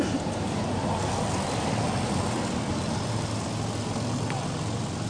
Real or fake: real